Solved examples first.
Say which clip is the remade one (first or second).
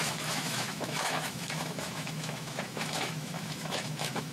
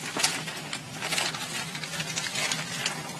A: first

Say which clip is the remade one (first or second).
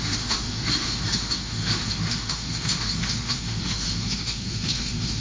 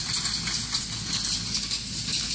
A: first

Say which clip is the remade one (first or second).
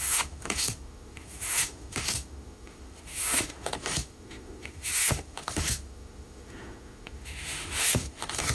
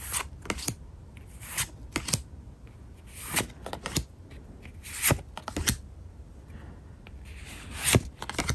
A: first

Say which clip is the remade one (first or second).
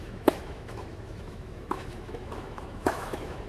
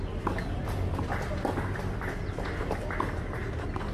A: first